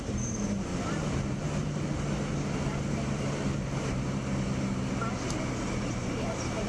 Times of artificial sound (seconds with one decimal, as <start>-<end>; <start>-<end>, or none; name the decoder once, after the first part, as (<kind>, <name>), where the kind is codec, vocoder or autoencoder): 0.0-0.7 (vocoder, BigVGAN v2); 2.9-4.2; 6.2-6.7